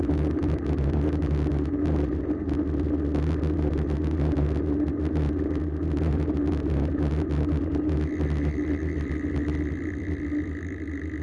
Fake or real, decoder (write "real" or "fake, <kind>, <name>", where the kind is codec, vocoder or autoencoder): real